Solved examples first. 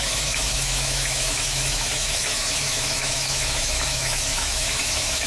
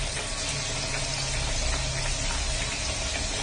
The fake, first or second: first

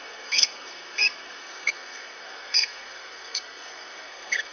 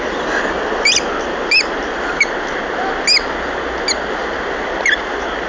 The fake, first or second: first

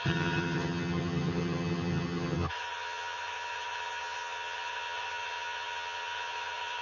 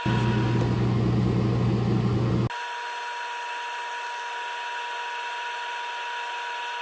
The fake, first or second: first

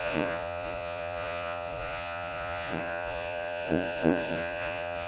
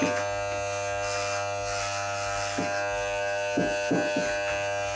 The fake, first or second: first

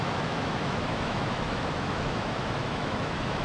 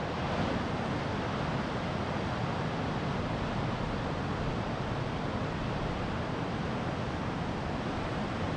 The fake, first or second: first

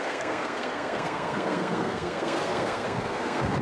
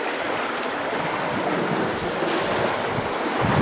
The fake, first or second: first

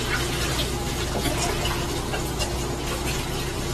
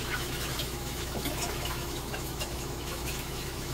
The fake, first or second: second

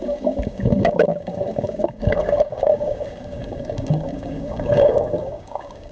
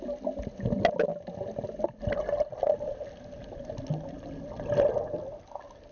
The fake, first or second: first